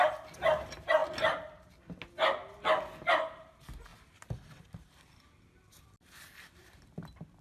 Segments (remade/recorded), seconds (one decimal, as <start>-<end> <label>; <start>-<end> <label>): 0.0-7.4 recorded